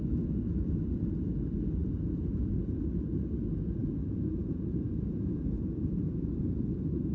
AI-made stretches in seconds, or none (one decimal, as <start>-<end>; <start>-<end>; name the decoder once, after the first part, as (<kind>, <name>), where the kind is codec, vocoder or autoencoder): 1.8-2.4 (vocoder, Vocos); 3.8-7.1